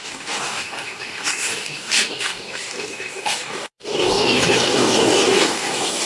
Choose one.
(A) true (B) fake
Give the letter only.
B